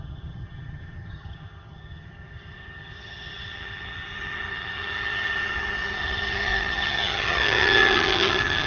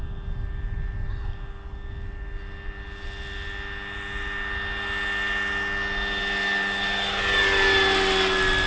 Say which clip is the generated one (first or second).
first